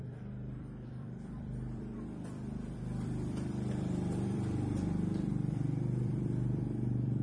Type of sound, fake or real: fake